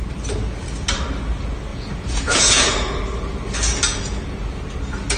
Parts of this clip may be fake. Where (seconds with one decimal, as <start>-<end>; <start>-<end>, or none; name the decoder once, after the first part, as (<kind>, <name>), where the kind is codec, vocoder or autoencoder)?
1.7-3.0 (vocoder, Vocos); 3.9-4.6